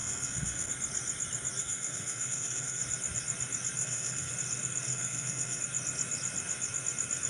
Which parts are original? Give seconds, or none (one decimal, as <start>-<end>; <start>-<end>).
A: 0.7-1.6; 2.8-3.8; 4.3-4.9; 5.6-7.3